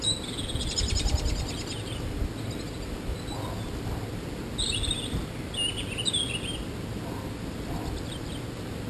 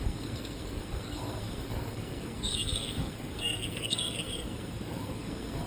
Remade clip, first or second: second